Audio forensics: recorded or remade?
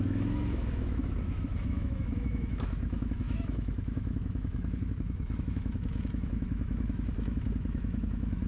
remade